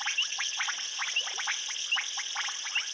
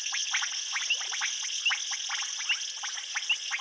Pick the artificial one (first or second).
first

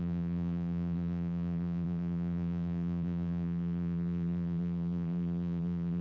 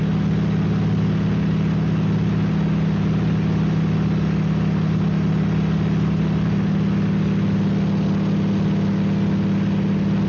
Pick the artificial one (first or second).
first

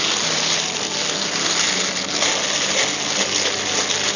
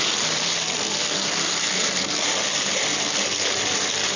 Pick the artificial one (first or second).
second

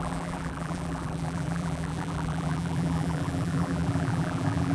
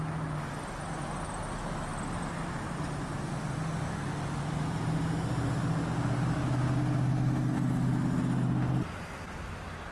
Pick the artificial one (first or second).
first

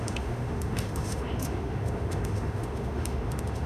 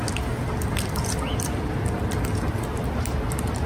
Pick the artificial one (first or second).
first